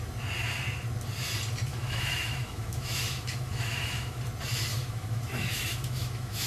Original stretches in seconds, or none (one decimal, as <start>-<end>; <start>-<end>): 0.0-1.7; 4.2-4.7